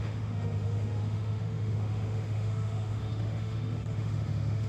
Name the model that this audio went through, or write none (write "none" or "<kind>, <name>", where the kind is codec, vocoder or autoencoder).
autoencoder, DAC-VAE